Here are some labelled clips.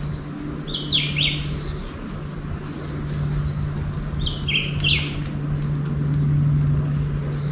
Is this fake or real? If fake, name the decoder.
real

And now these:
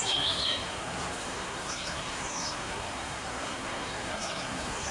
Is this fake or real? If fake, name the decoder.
fake, codec, SNAC